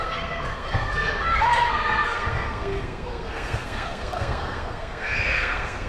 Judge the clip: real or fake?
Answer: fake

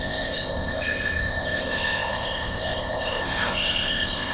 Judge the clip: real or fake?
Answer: fake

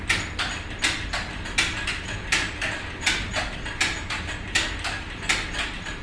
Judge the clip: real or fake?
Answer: real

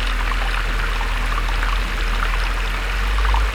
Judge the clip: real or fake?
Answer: real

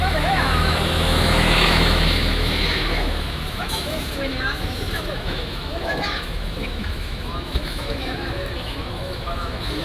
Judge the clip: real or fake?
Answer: fake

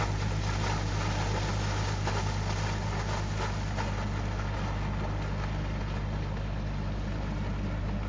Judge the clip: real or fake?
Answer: real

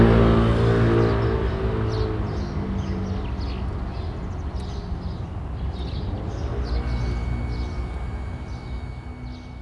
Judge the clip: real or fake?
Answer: real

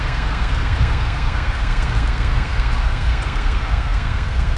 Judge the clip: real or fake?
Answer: fake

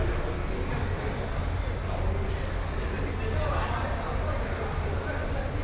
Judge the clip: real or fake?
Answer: real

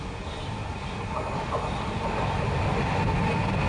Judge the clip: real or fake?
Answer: real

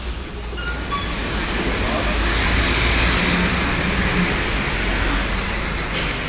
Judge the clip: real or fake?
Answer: real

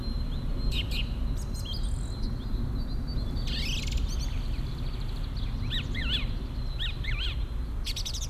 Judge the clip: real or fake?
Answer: real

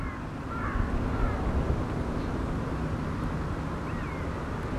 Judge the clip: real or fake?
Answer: real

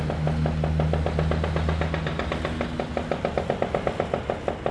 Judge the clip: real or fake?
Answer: real